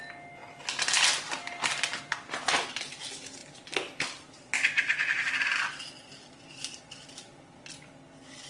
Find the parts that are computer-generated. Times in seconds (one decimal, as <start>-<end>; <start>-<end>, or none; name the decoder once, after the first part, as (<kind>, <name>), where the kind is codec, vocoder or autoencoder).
none

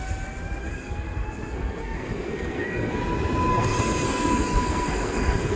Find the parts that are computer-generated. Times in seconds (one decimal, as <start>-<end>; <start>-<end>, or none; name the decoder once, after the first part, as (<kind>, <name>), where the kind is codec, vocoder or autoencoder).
0.6-3.0 (codec, SNAC); 3.5-5.6

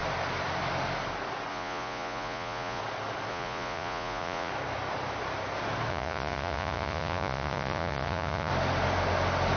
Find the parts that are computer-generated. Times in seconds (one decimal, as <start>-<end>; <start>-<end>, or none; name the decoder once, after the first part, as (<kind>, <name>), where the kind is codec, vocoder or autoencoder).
1.5-2.8 (vocoder, Vocos); 3.3-4.5; 5.9-8.5

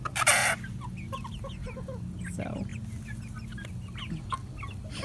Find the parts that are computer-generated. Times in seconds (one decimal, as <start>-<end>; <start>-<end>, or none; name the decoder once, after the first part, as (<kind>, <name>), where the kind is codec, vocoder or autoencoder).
none

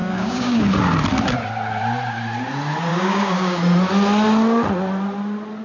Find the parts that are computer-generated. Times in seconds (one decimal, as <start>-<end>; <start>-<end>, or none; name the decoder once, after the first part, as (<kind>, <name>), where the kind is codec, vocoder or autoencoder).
0.0-0.6 (codec, DAC); 2.9-3.6

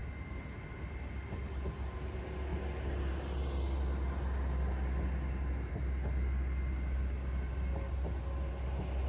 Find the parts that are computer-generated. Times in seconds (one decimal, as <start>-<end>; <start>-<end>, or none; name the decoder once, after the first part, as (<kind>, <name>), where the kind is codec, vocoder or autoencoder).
none

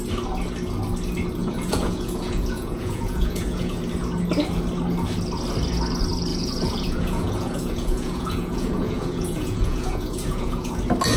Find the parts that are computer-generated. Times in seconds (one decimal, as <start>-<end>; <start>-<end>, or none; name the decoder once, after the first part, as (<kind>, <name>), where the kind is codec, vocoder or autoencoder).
1.4-3.8 (vocoder, Vocos); 6.3-10.7